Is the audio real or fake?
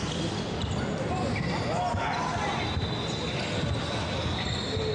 real